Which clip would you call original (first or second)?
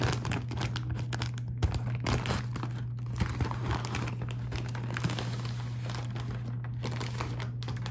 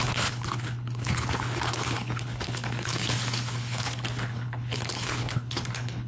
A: first